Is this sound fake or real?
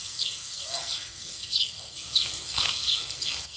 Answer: fake